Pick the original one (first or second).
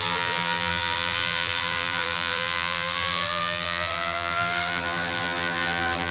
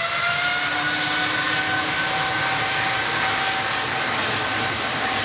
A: second